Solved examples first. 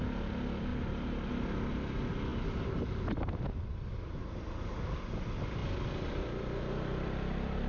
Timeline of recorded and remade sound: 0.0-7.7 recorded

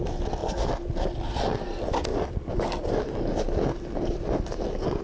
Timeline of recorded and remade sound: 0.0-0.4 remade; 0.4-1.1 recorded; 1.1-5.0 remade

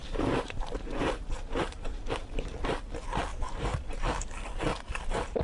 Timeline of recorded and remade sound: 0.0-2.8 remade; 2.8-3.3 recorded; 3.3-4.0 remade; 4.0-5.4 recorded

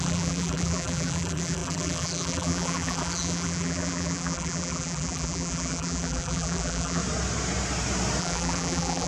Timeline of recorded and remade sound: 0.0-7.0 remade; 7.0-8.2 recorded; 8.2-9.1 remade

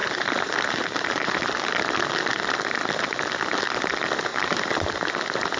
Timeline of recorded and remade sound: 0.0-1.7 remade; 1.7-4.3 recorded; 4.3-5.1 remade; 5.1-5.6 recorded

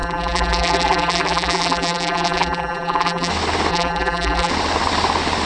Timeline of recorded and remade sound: 0.0-3.3 remade; 3.3-3.7 recorded; 3.7-4.5 remade; 4.5-5.5 recorded